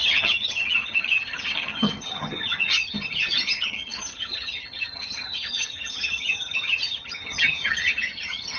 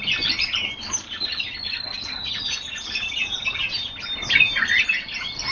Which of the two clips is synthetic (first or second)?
first